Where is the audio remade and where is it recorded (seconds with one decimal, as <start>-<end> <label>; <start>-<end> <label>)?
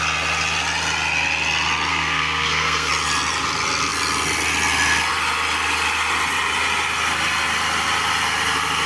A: 0.0-1.9 recorded; 1.9-2.9 remade; 2.9-8.9 recorded